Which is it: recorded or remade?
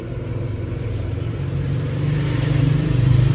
remade